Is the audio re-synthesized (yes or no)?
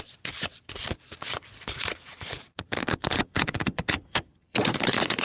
yes